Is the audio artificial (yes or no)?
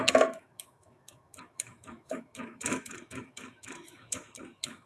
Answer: yes